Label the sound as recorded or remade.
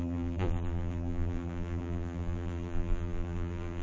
remade